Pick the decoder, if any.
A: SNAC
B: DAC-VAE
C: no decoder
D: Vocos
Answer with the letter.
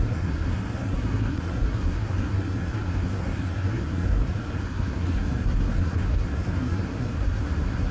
A